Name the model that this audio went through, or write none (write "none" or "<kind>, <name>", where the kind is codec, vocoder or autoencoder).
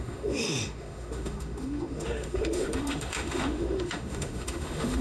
autoencoder, DAC-VAE